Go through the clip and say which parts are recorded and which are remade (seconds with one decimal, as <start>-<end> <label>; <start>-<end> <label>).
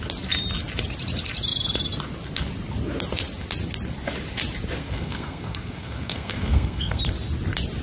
0.0-4.8 recorded; 4.8-7.0 remade; 7.0-7.8 recorded